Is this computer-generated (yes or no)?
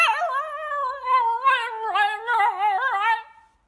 no